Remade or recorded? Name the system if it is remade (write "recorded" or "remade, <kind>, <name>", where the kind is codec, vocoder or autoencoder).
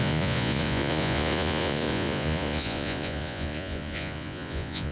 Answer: remade, vocoder, Vocos